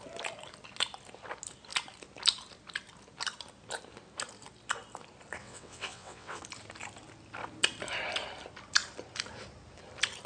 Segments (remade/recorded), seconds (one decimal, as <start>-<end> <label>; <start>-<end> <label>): 0.0-5.4 recorded; 5.4-6.4 remade; 6.4-10.3 recorded